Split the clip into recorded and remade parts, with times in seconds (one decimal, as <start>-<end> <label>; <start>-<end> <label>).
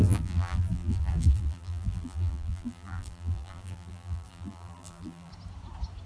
0.0-5.3 remade; 5.3-6.1 recorded